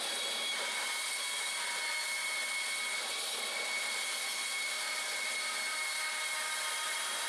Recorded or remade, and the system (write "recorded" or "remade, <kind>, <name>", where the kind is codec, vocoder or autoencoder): recorded